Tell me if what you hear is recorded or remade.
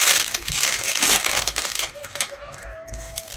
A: remade